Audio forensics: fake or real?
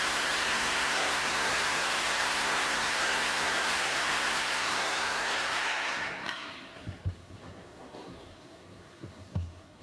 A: fake